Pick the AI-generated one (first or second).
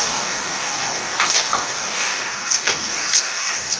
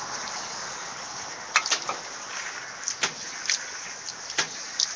first